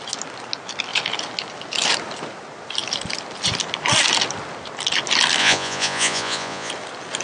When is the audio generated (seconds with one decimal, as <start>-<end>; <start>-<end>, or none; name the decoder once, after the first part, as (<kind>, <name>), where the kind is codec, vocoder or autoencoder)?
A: 5.4-6.7 (vocoder, Vocos)